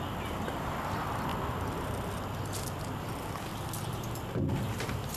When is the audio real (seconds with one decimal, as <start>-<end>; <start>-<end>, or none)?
1.3-2.6; 3.5-4.5